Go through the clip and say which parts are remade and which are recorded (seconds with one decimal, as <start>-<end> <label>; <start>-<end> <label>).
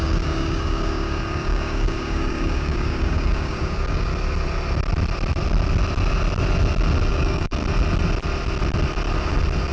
0.0-4.1 remade; 4.1-7.1 recorded; 7.1-7.6 remade; 7.6-9.7 recorded